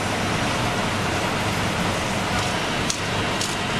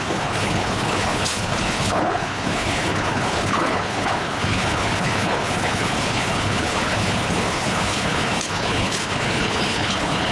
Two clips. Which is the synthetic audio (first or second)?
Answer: second